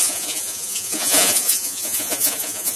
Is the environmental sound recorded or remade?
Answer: remade